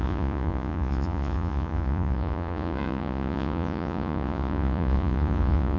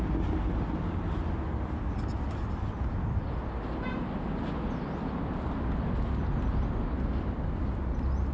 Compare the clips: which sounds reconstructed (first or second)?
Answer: first